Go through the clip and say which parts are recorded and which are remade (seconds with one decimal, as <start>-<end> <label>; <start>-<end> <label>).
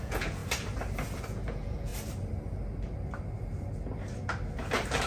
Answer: 0.0-0.4 remade; 0.4-1.2 recorded; 1.2-1.9 remade; 1.9-5.1 recorded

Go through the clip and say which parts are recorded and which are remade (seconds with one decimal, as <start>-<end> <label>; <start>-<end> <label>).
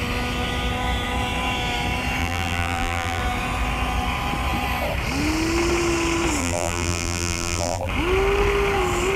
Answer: 0.0-2.2 recorded; 2.2-3.2 remade; 3.2-6.4 recorded; 6.4-7.9 remade; 7.9-9.2 recorded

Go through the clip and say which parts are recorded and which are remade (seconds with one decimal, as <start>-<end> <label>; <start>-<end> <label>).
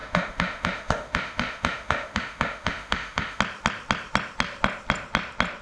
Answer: 0.0-3.4 remade; 3.4-5.6 recorded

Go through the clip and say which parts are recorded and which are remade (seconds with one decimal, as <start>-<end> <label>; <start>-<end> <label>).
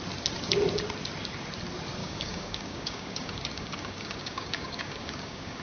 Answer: 0.0-2.0 recorded; 2.0-5.6 remade